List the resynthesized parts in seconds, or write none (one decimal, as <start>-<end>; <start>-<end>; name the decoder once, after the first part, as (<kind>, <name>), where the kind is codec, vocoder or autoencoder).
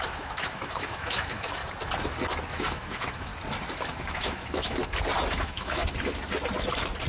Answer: 0.0-1.6 (autoencoder, DAC-VAE); 2.5-3.3; 3.9-4.8; 5.3-5.8